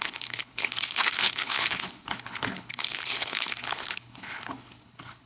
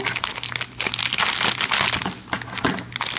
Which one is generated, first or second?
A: first